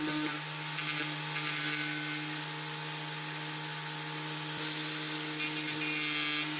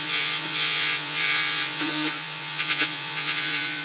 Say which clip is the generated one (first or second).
second